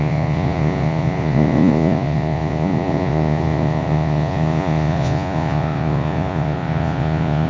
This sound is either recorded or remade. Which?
remade